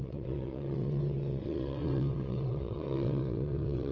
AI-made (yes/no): yes